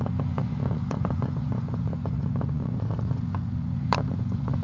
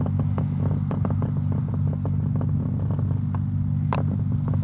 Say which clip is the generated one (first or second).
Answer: first